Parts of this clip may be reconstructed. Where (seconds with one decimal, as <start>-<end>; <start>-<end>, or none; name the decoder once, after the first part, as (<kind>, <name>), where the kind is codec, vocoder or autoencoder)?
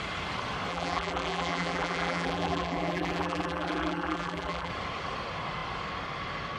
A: 0.7-4.7 (vocoder, BigVGAN v2)